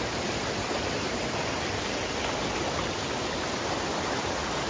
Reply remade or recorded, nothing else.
recorded